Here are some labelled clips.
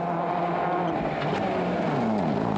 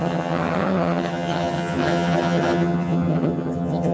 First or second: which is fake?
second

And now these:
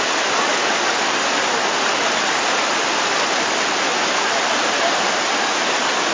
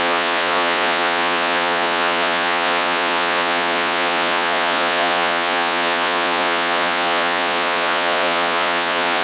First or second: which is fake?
second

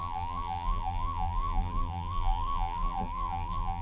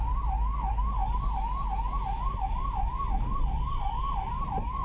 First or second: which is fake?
first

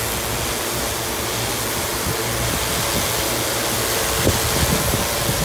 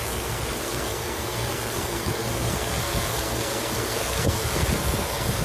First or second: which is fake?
second